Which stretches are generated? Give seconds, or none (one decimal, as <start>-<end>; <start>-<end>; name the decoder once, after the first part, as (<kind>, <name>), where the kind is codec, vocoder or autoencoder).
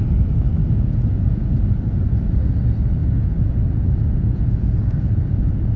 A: 0.6-1.5 (vocoder, Vocos); 3.0-5.8